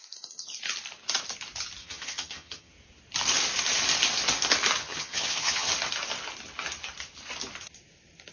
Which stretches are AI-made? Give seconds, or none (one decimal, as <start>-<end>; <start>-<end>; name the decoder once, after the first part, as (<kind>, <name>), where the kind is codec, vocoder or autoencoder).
1.8-2.7 (vocoder, HiFi-GAN); 4.8-5.7